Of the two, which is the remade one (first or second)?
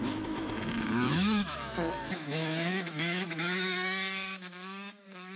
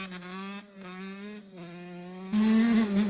first